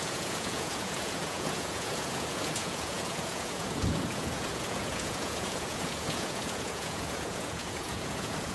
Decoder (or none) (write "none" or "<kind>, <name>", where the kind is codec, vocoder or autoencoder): vocoder, Vocos